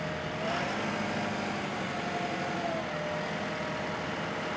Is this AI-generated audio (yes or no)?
no